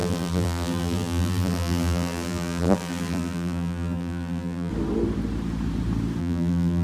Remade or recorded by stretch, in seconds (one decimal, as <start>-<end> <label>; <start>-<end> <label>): 0.0-4.7 remade; 4.7-6.2 recorded; 6.2-6.8 remade